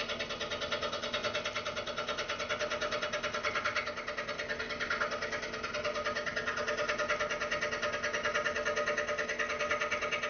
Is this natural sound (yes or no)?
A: yes